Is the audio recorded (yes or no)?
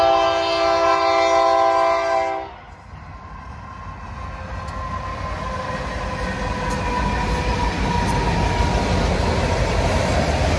yes